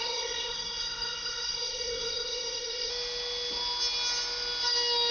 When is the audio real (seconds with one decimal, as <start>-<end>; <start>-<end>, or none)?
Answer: 2.9-5.1

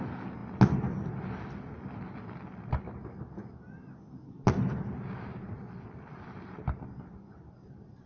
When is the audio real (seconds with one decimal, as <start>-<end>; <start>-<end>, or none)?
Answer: 0.0-8.1

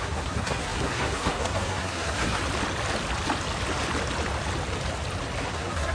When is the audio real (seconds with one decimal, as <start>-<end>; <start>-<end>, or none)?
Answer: 2.4-5.4

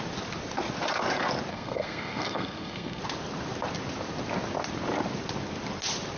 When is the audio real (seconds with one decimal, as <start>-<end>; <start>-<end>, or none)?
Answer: 0.0-1.5; 3.0-6.2

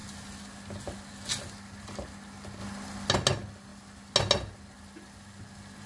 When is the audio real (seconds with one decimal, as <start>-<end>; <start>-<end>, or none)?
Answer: 0.0-5.9